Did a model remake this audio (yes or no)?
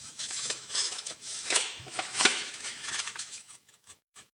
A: yes